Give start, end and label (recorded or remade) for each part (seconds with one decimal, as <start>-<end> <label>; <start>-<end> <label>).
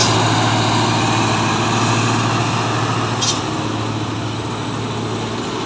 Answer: 0.0-5.7 recorded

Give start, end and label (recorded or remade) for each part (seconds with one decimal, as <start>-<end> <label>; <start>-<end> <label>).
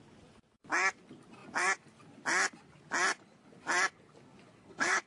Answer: 0.0-4.6 recorded; 4.6-5.1 remade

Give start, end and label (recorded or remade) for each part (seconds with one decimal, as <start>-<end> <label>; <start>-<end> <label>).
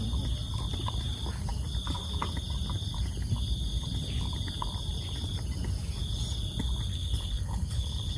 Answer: 0.0-6.9 recorded; 6.9-8.2 remade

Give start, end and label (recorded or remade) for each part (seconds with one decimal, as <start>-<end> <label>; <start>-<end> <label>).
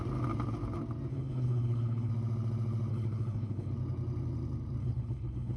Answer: 0.0-1.1 recorded; 1.1-2.1 remade; 2.1-2.9 recorded; 2.9-3.7 remade; 3.7-4.8 recorded; 4.8-5.6 remade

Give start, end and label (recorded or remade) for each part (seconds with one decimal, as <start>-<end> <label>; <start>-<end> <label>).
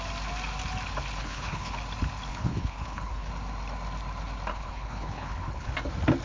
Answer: 0.0-1.2 recorded; 1.2-1.7 remade; 1.7-2.3 recorded; 2.3-3.3 remade; 3.3-4.5 recorded; 4.5-5.7 remade; 5.7-6.2 recorded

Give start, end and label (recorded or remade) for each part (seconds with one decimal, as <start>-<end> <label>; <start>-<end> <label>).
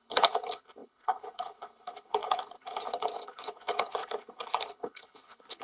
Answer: 0.0-5.6 remade